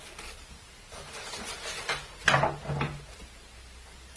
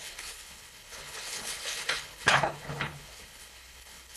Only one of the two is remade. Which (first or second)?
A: second